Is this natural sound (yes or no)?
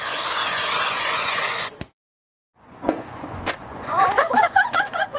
no